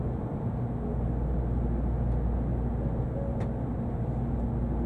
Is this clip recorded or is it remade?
recorded